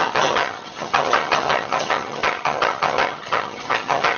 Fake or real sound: fake